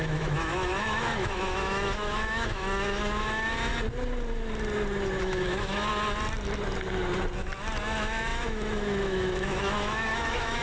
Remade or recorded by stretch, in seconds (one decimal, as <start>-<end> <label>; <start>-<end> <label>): 0.0-3.7 remade; 3.7-5.2 recorded; 5.2-5.9 remade; 5.9-7.8 recorded; 7.8-10.6 remade